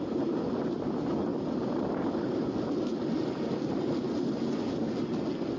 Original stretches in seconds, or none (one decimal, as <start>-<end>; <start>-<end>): 0.0-5.6